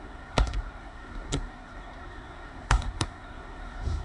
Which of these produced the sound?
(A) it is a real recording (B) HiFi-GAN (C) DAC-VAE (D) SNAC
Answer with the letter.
D